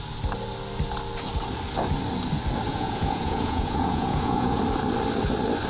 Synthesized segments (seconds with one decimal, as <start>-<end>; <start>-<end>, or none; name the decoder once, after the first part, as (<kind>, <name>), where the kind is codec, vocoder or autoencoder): 2.7-4.6 (vocoder, Vocos)